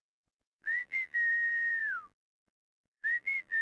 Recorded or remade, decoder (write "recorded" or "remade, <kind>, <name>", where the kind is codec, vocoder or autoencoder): remade, vocoder, BigVGAN v2